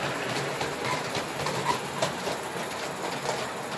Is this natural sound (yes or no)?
yes